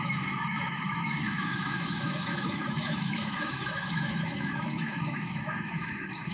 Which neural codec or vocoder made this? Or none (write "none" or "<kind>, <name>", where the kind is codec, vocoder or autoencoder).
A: autoencoder, DAC-VAE